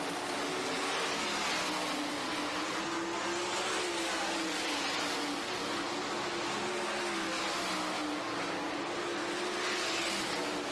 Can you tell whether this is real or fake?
real